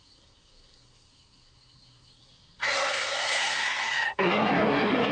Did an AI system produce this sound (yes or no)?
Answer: yes